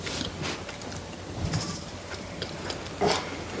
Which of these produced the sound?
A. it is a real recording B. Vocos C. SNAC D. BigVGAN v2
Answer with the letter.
A